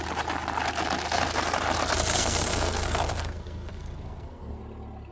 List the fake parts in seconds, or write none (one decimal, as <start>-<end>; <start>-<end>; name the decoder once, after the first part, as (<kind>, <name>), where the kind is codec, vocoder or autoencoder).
2.1-4.6 (codec, SNAC)